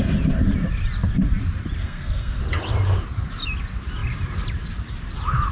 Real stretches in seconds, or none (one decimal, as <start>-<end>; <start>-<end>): 0.0-1.8; 2.4-5.5